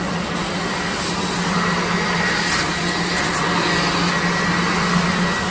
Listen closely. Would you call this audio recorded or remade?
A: recorded